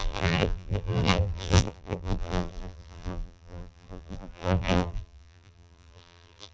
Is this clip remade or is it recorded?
remade